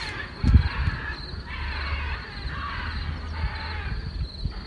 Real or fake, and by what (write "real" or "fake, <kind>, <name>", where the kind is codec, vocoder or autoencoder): real